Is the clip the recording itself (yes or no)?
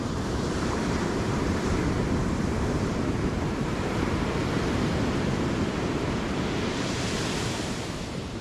no